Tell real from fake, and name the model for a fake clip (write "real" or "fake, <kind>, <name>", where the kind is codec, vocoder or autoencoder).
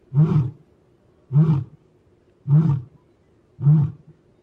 real